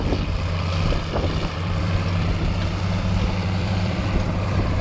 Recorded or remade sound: remade